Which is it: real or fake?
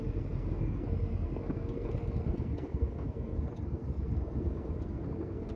fake